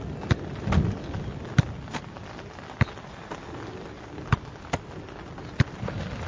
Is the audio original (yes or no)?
yes